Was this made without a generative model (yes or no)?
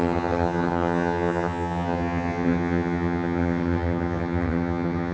no